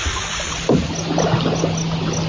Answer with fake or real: real